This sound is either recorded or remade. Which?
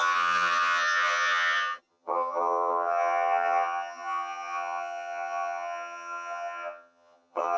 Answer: remade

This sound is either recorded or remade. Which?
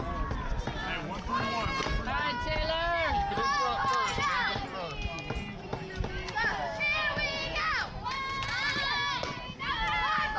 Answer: recorded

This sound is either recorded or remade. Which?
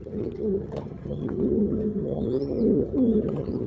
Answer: remade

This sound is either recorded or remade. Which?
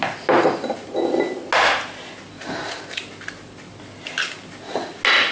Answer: recorded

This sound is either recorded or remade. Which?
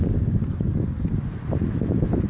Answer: recorded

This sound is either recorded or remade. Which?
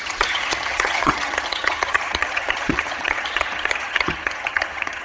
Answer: remade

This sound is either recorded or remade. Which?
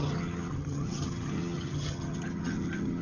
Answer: remade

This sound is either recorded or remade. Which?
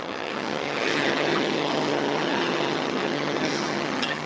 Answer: remade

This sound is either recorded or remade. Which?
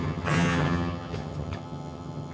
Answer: remade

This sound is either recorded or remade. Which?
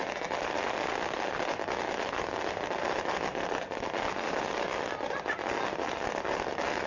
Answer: recorded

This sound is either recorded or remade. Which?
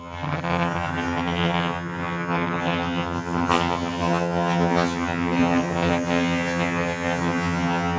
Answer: remade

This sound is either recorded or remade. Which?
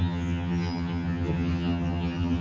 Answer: remade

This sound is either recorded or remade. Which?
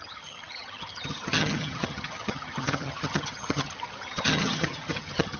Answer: remade